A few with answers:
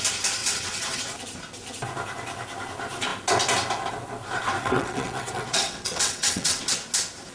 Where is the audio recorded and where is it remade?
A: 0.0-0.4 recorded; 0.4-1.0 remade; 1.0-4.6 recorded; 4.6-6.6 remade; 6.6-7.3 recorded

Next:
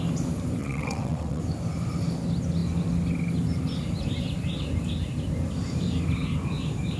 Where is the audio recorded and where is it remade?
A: 0.0-0.6 recorded; 0.6-1.4 remade; 1.4-7.0 recorded

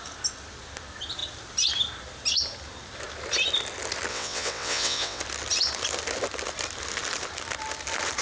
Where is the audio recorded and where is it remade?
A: 0.0-4.1 recorded; 4.1-5.2 remade; 5.2-8.2 recorded

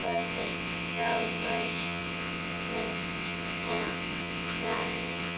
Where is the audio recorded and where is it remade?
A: 0.0-5.4 remade

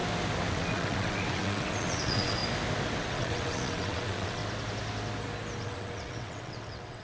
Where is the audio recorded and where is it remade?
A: 0.0-0.5 recorded; 0.5-2.4 remade; 2.4-3.0 recorded; 3.0-4.4 remade; 4.4-5.6 recorded; 5.6-7.0 remade

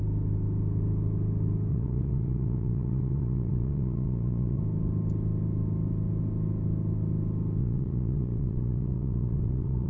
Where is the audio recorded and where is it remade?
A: 0.0-1.7 recorded; 1.7-4.6 remade; 4.6-7.6 recorded; 7.6-9.9 remade

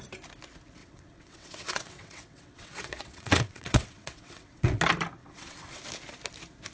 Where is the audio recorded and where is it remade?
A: 0.0-0.8 recorded; 0.8-4.8 remade; 4.8-5.2 recorded; 5.2-5.8 remade; 5.8-6.7 recorded